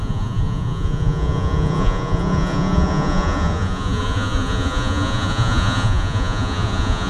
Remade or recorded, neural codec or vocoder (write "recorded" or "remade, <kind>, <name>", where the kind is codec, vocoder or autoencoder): remade, vocoder, Vocos